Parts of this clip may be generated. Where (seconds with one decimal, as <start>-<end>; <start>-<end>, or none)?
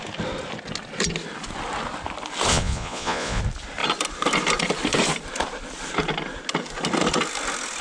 2.5-3.4